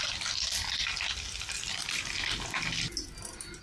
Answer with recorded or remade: recorded